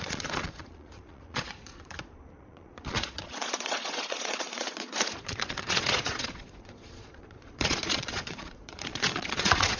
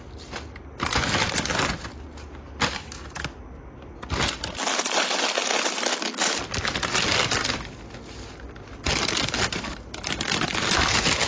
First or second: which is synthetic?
first